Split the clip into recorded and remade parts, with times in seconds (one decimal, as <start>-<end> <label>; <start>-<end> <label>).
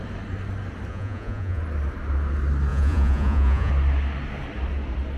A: 0.0-0.9 recorded; 0.9-1.6 remade; 1.6-2.7 recorded; 2.7-3.7 remade; 3.7-5.2 recorded